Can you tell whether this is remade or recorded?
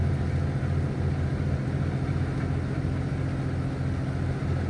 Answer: recorded